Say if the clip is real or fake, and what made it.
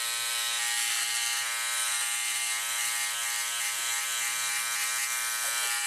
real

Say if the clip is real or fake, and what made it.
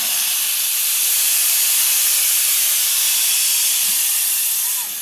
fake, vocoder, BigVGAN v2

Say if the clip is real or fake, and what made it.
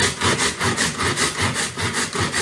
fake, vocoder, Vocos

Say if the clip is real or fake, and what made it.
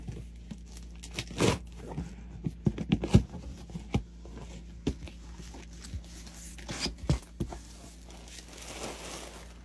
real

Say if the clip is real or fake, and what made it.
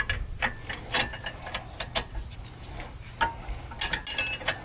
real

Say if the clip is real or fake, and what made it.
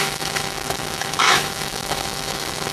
fake, autoencoder, DAC-VAE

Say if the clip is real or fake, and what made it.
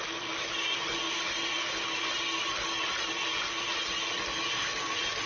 real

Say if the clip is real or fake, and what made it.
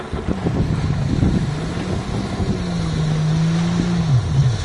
real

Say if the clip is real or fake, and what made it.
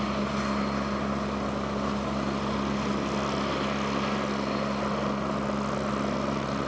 real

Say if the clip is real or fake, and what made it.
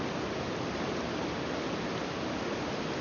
real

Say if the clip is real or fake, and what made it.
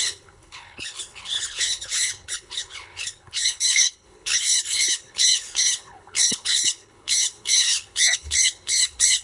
fake, codec, HILCodec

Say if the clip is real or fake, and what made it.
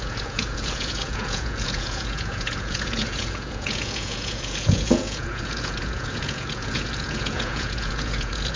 fake, vocoder, Vocos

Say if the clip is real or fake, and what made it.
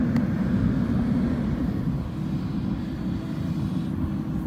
real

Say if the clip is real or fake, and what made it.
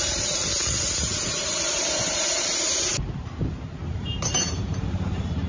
fake, vocoder, BigVGAN v2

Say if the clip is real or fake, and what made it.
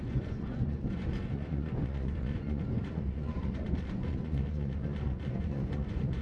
fake, vocoder, Vocos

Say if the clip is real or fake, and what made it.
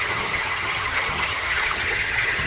fake, vocoder, HiFi-GAN